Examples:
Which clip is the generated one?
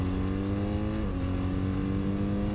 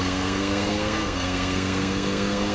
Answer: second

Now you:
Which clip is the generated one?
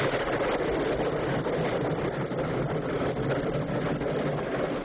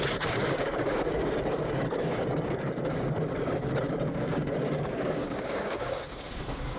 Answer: second